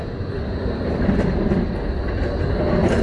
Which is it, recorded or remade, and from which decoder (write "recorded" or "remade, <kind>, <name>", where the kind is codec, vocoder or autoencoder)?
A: recorded